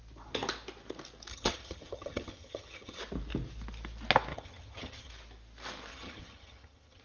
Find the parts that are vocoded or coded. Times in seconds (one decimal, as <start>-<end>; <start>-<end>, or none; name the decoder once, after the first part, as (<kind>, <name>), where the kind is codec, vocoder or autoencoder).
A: 1.3-3.0 (vocoder, HiFi-GAN); 4.3-5.1; 5.9-7.0